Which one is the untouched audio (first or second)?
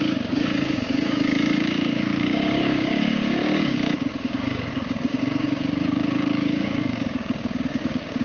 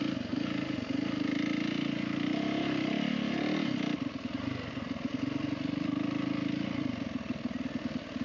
second